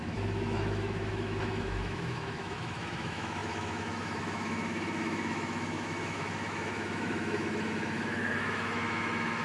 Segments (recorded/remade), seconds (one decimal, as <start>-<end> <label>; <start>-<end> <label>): 0.0-9.4 remade